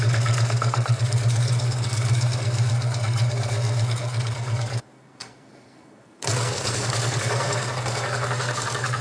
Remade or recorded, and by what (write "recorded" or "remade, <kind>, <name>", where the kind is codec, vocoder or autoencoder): remade, codec, SNAC